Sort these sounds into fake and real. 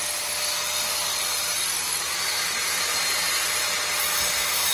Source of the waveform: real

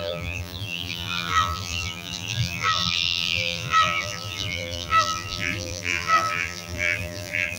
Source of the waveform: fake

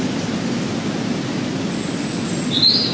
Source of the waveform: real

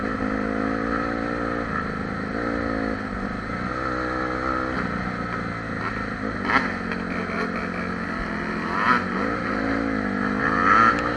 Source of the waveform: real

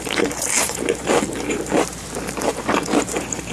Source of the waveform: fake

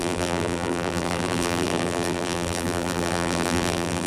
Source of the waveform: fake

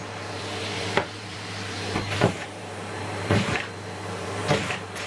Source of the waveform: fake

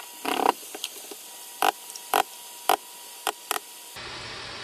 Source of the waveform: real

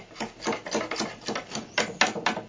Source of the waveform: real